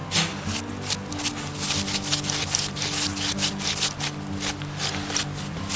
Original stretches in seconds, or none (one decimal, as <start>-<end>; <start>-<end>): 0.0-5.8